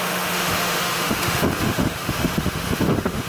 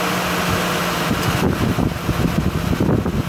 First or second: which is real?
second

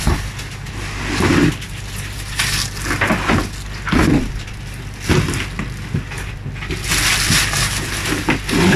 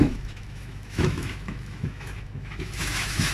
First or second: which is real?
first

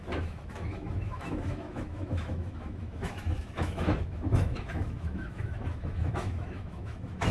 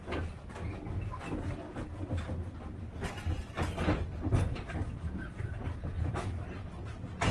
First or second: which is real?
second